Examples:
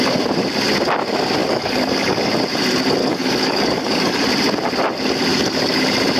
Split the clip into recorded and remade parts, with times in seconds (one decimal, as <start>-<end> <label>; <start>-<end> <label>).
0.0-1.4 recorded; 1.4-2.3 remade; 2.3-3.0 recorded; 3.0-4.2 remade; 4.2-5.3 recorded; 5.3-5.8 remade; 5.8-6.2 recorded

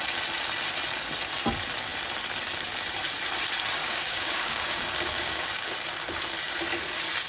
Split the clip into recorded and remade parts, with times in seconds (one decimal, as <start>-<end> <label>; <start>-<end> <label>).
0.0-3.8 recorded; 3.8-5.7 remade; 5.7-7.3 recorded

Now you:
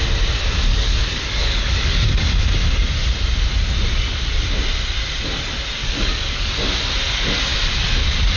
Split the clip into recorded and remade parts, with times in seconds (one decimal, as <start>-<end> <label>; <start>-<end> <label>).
0.0-0.7 recorded; 0.7-2.3 remade; 2.3-5.8 recorded; 5.8-6.5 remade; 6.5-8.4 recorded

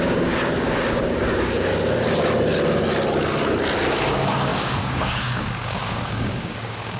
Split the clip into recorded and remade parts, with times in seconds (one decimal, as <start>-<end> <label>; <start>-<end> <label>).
0.0-1.7 remade; 1.7-4.1 recorded; 4.1-7.0 remade

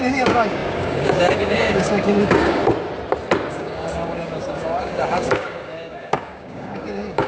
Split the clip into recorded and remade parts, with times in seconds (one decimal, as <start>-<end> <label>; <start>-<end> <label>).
0.0-2.6 remade; 2.6-3.5 recorded; 3.5-7.3 remade

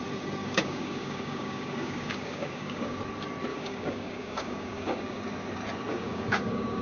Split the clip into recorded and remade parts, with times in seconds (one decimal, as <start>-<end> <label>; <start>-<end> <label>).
0.0-0.4 recorded; 0.4-3.0 remade; 3.0-3.5 recorded; 3.5-5.2 remade; 5.2-5.9 recorded; 5.9-6.8 remade